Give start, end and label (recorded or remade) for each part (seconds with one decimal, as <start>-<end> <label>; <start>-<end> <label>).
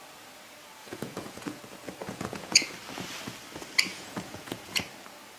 0.0-0.8 recorded; 0.8-1.6 remade; 1.6-2.0 recorded; 2.0-2.7 remade; 2.7-3.9 recorded; 3.9-4.8 remade; 4.8-5.4 recorded